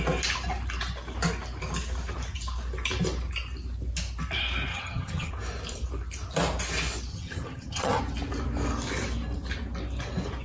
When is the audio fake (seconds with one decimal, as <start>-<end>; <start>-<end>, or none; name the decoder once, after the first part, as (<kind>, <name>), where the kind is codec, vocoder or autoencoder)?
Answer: 4.7-5.3 (vocoder, HiFi-GAN); 7.1-8.0